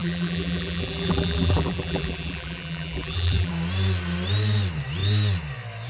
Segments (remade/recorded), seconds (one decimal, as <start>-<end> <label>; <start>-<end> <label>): 0.0-3.5 remade; 3.5-5.9 recorded